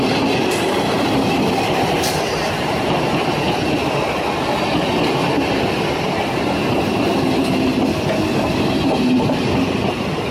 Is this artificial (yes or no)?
no